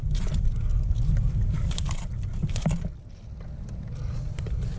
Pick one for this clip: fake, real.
real